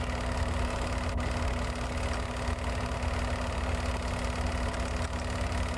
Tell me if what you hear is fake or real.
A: real